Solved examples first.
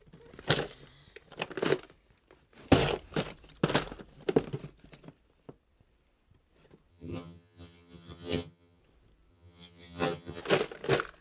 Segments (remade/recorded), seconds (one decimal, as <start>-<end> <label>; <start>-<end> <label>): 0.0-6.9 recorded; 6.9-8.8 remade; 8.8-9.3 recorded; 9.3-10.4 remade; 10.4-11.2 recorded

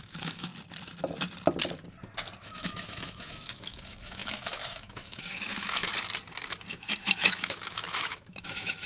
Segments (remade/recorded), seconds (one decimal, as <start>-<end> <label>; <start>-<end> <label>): 0.0-0.5 remade; 0.5-2.4 recorded; 2.4-5.9 remade; 5.9-6.7 recorded; 6.7-8.9 remade

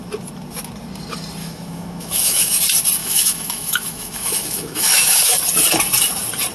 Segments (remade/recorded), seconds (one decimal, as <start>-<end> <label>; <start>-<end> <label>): 0.0-1.4 recorded; 1.4-2.6 remade; 2.6-3.0 recorded; 3.0-5.4 remade; 5.4-6.5 recorded

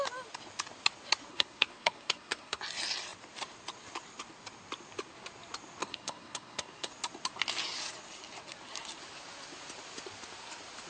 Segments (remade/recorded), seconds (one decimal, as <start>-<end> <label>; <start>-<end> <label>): 0.0-1.3 recorded; 1.3-2.6 remade; 2.6-5.8 recorded; 5.8-6.9 remade; 6.9-10.9 recorded